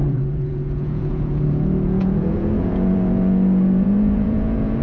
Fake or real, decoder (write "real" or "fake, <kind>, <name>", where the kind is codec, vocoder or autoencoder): fake, vocoder, Vocos